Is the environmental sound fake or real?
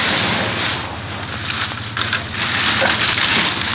real